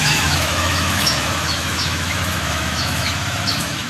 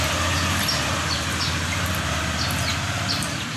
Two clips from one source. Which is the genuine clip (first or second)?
second